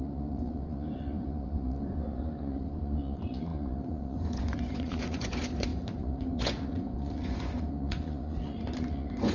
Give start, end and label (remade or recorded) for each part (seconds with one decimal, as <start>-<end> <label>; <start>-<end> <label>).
0.0-9.3 remade